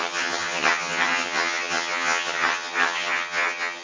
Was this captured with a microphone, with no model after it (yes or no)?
no